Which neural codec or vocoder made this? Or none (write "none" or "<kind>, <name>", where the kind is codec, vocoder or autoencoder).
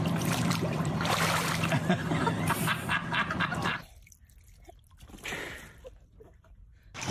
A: vocoder, BigVGAN v2